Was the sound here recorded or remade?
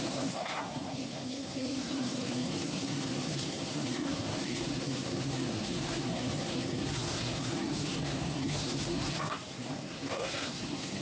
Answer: remade